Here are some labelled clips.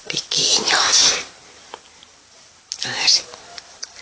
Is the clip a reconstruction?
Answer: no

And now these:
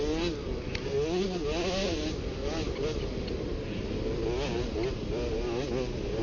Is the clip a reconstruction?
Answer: no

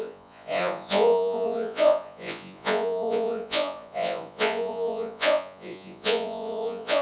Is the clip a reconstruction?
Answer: yes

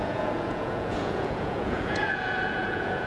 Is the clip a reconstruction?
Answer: yes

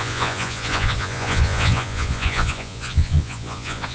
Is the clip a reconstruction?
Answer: yes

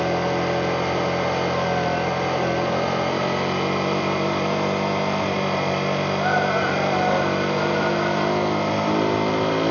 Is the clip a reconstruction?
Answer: no